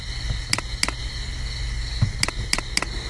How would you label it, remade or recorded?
recorded